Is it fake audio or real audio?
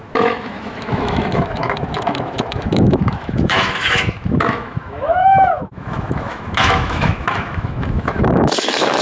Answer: fake